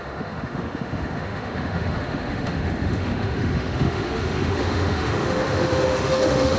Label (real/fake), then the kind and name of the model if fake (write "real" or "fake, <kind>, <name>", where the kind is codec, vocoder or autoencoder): fake, autoencoder, DAC-VAE